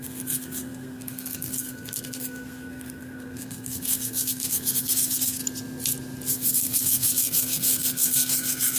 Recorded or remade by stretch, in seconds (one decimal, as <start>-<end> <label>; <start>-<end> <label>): 0.0-5.4 remade; 5.4-6.3 recorded; 6.3-8.8 remade